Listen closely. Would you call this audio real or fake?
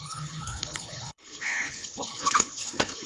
fake